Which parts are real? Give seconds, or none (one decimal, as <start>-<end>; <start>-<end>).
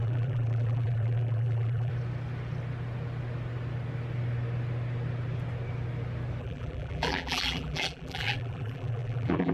1.9-6.4